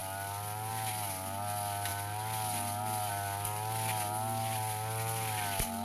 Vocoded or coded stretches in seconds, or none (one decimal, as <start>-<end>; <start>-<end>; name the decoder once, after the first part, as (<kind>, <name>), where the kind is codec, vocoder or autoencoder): none